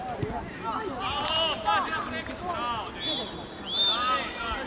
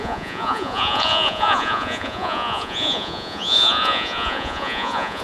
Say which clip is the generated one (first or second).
second